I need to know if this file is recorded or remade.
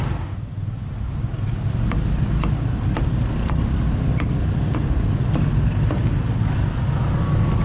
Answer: recorded